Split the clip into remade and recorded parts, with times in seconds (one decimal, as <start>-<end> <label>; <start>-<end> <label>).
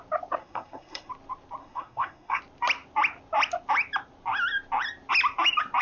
0.0-0.4 recorded; 0.4-1.1 remade; 1.1-1.6 recorded; 1.6-2.4 remade; 2.4-5.8 recorded